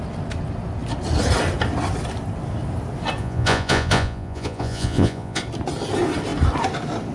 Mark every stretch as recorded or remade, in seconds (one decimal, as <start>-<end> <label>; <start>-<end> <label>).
0.0-3.2 recorded; 3.2-5.4 remade; 5.4-7.1 recorded